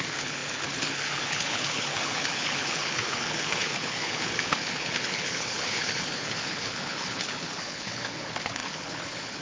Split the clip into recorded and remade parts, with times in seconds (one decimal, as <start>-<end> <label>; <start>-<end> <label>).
0.0-9.4 remade